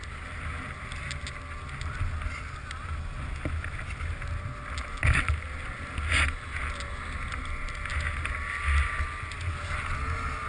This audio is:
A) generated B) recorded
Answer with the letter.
B